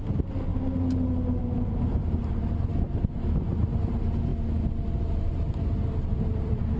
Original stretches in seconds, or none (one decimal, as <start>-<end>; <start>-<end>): 0.5-1.4; 2.7-3.4; 4.3-5.0